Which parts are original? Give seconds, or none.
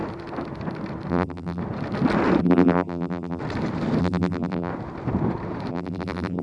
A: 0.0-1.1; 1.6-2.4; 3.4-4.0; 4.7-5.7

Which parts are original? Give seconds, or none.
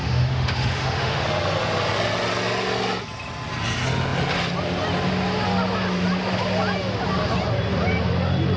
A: 1.2-8.6